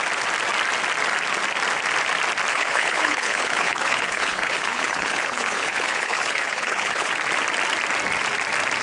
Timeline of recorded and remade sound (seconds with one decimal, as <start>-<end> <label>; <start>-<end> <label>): 0.0-2.5 recorded; 2.5-7.1 remade; 7.1-8.8 recorded